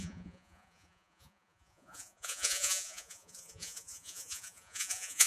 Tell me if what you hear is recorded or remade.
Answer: remade